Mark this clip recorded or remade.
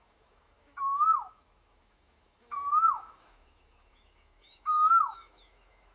remade